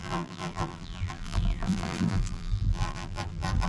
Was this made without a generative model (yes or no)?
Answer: no